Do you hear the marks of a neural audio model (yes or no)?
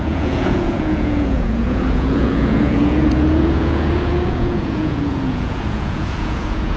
yes